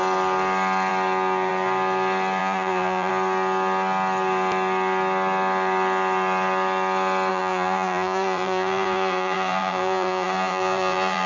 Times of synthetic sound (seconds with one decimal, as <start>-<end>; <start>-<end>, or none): 2.4-3.1; 7.3-11.3